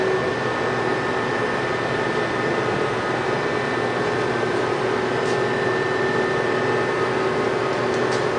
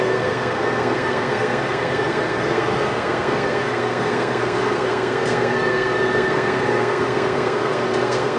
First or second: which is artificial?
second